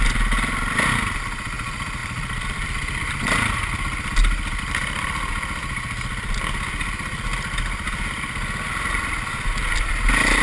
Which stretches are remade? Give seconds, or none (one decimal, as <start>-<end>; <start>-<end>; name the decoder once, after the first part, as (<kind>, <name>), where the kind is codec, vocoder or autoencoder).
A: none